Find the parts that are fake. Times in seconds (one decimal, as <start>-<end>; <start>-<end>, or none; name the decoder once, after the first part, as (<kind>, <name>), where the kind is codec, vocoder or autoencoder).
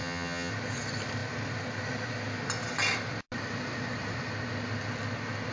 0.0-0.5 (vocoder, HiFi-GAN)